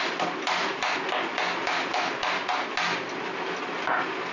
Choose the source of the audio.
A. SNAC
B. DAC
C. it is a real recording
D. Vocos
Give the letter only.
C